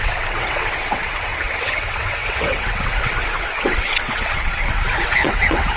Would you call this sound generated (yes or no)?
yes